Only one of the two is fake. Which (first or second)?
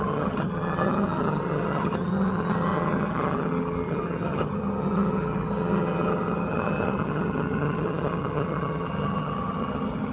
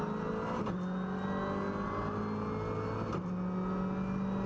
first